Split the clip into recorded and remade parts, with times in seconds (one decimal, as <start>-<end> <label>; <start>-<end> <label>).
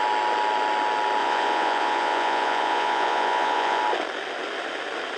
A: 0.0-1.2 recorded; 1.2-3.8 remade; 3.8-5.2 recorded